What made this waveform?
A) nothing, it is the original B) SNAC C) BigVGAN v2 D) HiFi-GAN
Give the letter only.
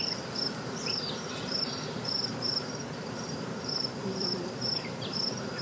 C